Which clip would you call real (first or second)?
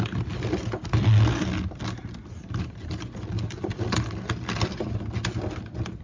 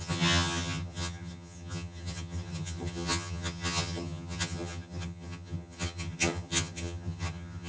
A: first